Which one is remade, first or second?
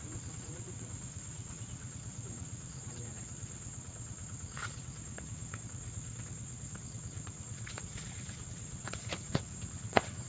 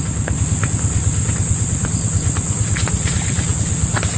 first